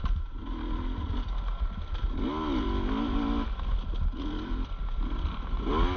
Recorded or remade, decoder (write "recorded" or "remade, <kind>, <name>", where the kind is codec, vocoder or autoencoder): recorded